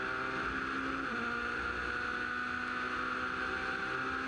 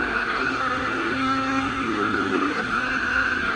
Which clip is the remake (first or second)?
second